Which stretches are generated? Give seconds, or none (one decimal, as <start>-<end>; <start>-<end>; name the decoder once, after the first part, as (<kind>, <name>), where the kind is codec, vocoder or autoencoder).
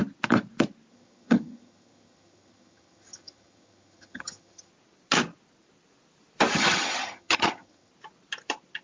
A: 0.9-4.7 (vocoder, HiFi-GAN); 6.5-7.9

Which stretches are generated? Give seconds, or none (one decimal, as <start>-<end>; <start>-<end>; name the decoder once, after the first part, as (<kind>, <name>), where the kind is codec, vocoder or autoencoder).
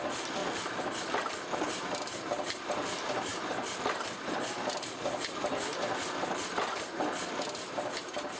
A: none